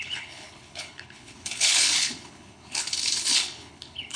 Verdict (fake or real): fake